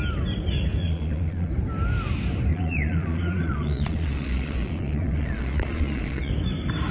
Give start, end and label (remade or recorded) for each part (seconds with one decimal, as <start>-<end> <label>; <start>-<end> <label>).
0.0-0.8 recorded; 0.8-1.5 remade; 1.5-2.5 recorded; 2.5-6.3 remade; 6.3-6.9 recorded